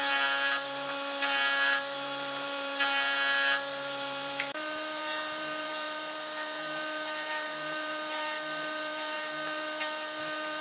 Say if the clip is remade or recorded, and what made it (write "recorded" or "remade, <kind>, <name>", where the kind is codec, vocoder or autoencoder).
remade, vocoder, BigVGAN v2